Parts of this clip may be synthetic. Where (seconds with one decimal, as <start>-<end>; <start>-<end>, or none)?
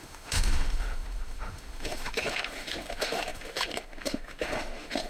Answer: 0.0-5.1